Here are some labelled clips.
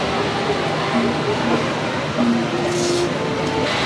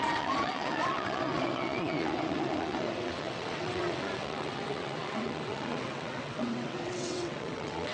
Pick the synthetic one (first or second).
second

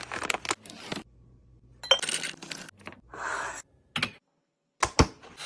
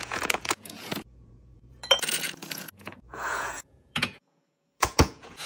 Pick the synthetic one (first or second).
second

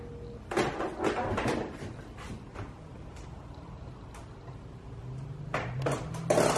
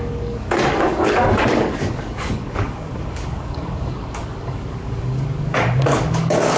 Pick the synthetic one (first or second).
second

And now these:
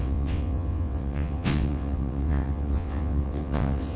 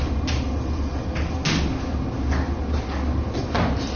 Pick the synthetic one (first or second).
first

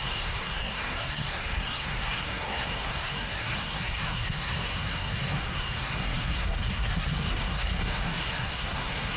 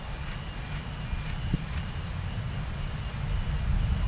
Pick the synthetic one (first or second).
first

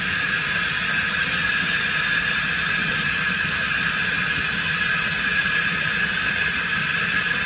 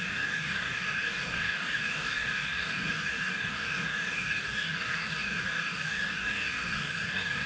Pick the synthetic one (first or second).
second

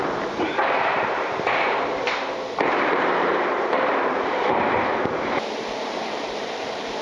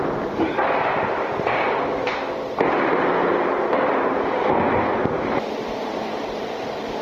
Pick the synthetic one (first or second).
first